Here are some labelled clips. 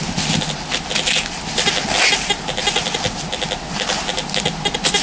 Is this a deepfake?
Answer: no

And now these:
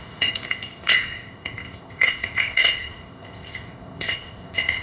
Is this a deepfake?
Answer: yes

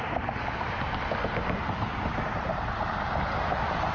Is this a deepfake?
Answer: no